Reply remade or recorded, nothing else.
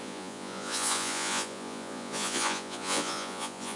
remade